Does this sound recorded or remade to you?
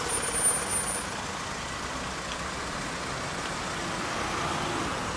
recorded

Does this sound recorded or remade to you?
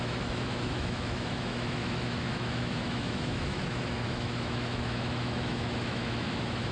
remade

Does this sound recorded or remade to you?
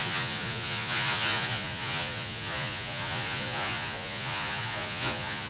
remade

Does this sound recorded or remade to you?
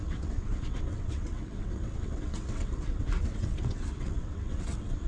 remade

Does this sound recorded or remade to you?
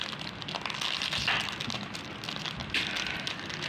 recorded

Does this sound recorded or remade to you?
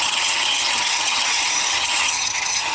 remade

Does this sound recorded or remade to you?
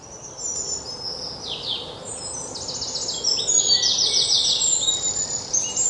recorded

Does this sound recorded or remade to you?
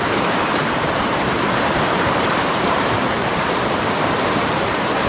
remade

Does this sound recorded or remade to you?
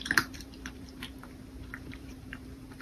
remade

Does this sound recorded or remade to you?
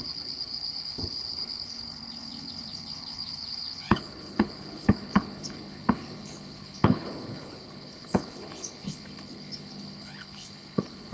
remade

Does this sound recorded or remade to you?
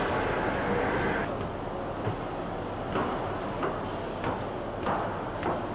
recorded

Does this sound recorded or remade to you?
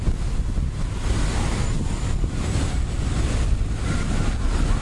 recorded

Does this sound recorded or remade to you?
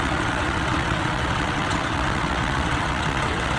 remade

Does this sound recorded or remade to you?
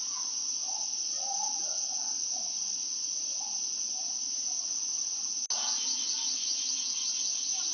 recorded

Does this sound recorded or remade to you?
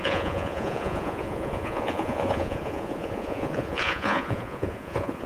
remade